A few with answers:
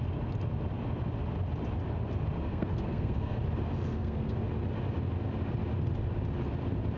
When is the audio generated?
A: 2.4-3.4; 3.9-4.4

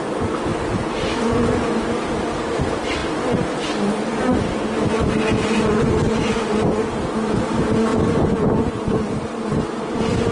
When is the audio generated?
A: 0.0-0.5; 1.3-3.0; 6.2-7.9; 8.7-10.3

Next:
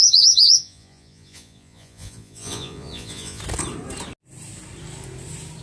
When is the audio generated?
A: 0.0-3.4

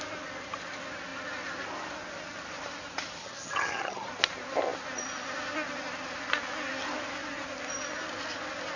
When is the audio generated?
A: 3.2-4.1

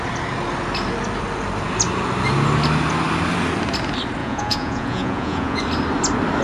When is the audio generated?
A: 4.2-5.6

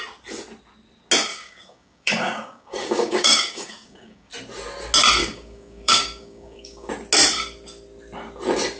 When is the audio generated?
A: 1.3-4.3; 5.2-6.9

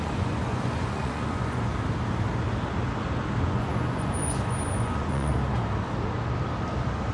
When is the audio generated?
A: 0.0-1.7; 3.4-5.3